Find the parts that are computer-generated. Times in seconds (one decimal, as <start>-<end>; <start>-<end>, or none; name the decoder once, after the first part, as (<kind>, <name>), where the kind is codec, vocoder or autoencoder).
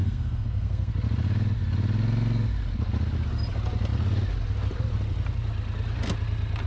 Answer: 0.0-0.9 (codec, SNAC)